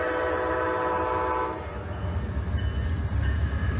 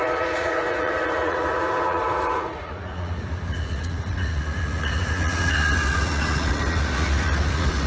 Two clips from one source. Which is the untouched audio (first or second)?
first